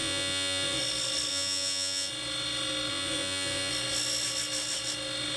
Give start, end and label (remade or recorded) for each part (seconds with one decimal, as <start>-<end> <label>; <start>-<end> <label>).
0.0-0.8 remade; 0.8-1.3 recorded; 1.3-2.1 remade; 2.1-2.9 recorded; 2.9-3.7 remade; 3.7-5.4 recorded